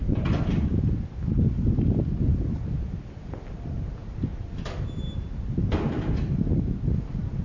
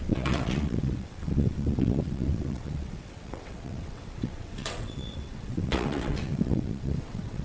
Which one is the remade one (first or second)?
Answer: second